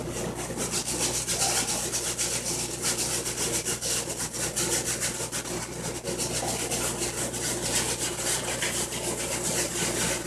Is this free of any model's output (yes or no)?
yes